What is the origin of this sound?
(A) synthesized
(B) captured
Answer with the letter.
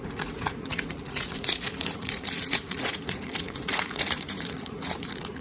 A